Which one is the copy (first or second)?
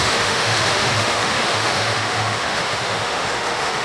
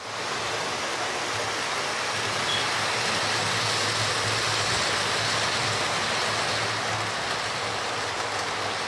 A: first